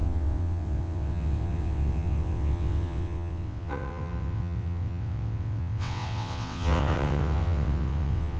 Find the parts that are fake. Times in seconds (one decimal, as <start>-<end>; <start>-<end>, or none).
0.0-8.4